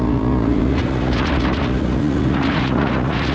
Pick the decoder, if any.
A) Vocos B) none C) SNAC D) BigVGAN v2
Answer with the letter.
A